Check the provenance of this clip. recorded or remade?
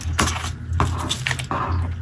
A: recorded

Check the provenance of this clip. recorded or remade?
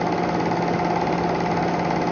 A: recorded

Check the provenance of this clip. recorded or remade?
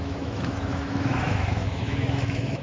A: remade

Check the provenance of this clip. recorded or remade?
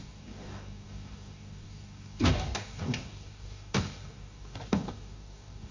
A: remade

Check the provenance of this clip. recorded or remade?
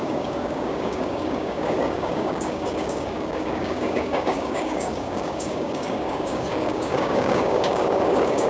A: remade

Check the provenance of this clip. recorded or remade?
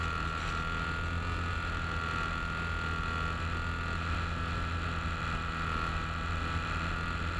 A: recorded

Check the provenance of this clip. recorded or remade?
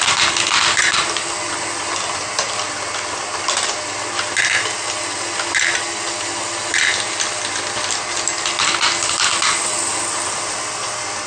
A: recorded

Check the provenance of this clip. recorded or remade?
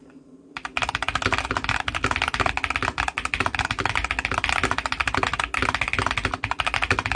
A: recorded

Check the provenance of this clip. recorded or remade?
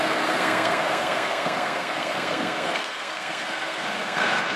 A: remade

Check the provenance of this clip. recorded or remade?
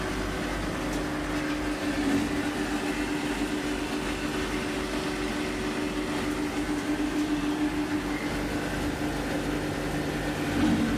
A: recorded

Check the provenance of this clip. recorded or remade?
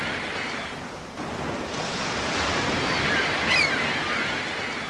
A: recorded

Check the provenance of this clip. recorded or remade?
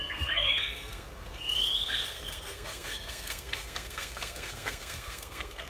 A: remade